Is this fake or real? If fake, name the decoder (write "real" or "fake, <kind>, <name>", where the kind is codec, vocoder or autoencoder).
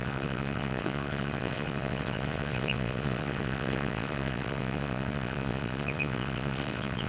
fake, vocoder, WaveNeXt